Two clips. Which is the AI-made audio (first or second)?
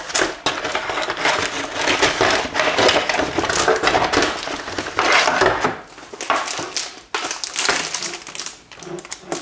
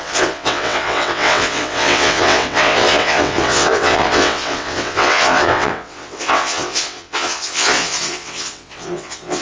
second